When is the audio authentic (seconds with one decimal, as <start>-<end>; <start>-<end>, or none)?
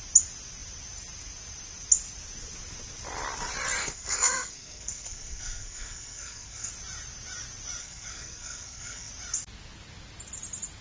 0.0-3.8; 6.7-7.8; 9.1-10.8